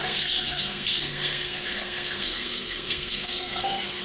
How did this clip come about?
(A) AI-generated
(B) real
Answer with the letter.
A